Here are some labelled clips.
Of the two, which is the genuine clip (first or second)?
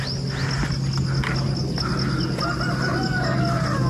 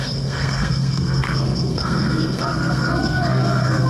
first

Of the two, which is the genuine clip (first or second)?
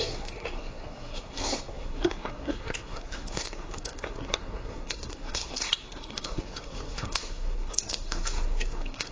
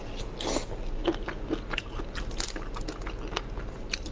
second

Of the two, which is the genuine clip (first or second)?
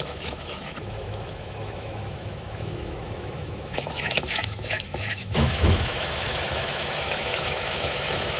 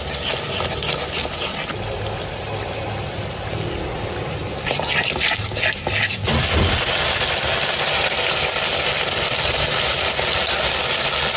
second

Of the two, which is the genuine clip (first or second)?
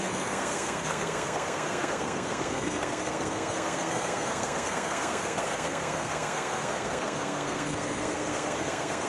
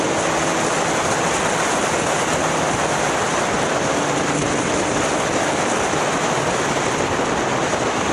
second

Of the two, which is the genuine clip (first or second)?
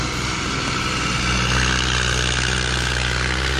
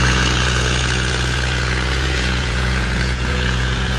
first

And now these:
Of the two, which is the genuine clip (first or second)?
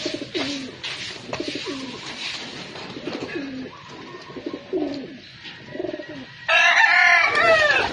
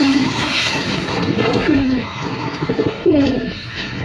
first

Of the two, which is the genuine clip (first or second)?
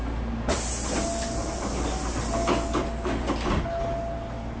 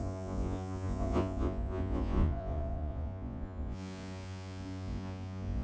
first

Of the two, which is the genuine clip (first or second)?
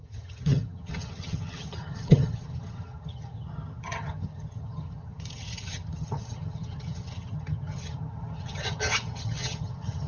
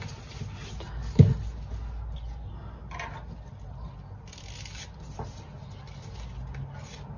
second